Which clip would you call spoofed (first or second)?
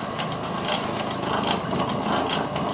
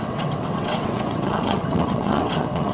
second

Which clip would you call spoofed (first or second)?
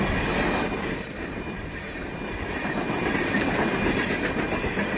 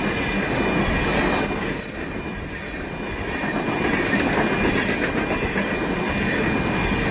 first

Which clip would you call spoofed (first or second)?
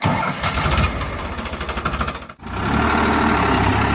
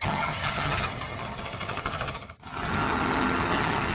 second